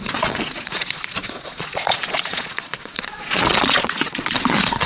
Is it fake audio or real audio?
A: fake